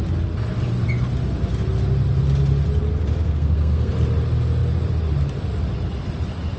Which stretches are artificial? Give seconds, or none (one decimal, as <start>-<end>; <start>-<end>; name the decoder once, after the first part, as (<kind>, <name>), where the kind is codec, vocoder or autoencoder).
3.2-3.9 (codec, SNAC)